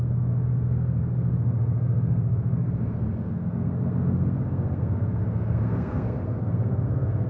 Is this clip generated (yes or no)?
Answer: yes